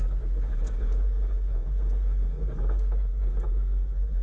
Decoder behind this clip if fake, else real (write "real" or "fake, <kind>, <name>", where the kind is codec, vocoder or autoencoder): fake, codec, SNAC